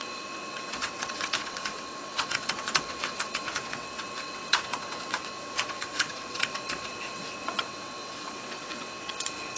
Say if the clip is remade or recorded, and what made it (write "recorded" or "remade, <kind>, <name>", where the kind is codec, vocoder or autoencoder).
remade, vocoder, WaveNeXt